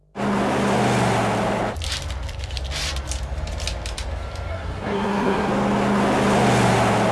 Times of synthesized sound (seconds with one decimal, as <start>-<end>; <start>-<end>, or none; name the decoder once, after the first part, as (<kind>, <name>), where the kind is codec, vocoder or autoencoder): 4.5-5.5 (codec, SNAC)